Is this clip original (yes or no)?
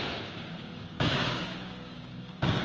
no